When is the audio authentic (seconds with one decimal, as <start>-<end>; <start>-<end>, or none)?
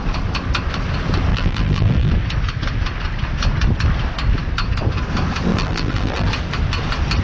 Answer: 0.0-1.3; 2.1-5.5; 6.3-7.2